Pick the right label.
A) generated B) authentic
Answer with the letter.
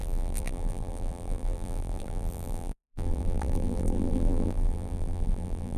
A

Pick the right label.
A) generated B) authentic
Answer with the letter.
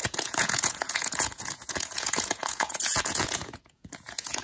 A